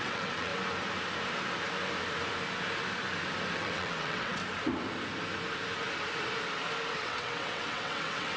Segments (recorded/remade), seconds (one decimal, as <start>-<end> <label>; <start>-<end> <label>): 0.0-0.5 remade; 0.5-3.5 recorded; 3.5-4.4 remade; 4.4-6.9 recorded; 6.9-8.4 remade